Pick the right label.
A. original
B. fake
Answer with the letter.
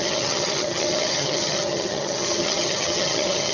B